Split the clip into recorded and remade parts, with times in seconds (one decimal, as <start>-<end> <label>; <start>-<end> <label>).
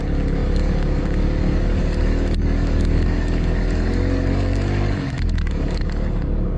0.0-6.6 remade